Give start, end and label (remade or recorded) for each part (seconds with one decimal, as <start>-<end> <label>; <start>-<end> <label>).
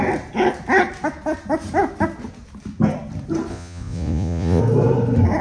0.0-3.5 recorded; 3.5-4.6 remade; 4.6-5.4 recorded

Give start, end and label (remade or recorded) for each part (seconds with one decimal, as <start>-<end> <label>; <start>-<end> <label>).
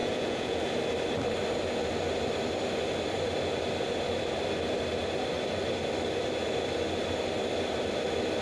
0.0-0.6 remade; 0.6-8.4 recorded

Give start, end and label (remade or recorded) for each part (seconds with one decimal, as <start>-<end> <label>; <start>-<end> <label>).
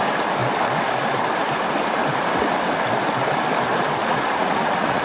0.0-4.0 recorded; 4.0-5.0 remade